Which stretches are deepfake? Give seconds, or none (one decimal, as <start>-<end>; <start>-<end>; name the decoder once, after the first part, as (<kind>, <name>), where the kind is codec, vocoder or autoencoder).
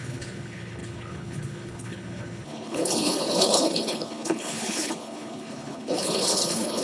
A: 0.0-6.8 (codec, HILCodec)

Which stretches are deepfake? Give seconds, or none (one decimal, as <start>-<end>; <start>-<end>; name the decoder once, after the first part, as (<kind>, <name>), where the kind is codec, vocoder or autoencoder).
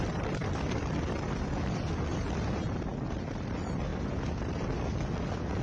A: none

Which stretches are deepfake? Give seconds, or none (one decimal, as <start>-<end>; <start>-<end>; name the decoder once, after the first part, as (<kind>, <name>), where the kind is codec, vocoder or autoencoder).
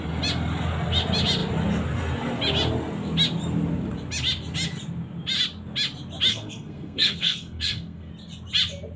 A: 6.3-8.1 (codec, SNAC)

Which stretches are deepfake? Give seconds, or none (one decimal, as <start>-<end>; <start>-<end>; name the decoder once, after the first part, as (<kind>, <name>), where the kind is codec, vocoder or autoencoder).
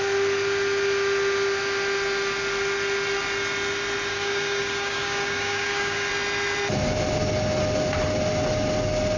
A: 4.1-6.1 (codec, DAC)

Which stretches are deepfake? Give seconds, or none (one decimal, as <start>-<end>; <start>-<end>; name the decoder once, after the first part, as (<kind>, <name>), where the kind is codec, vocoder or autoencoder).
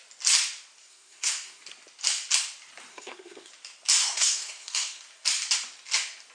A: 0.9-1.6 (codec, SNAC); 2.9-3.5; 4.0-5.0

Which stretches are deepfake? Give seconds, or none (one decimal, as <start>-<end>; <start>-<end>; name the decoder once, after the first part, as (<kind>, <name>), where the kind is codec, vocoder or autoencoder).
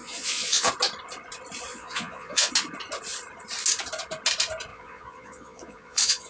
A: 0.0-0.7 (vocoder, Vocos); 1.7-2.5; 4.7-6.3